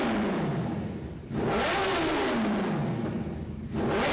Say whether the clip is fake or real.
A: real